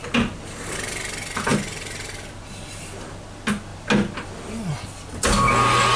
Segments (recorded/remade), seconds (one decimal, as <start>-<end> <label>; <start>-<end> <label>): 0.0-6.0 recorded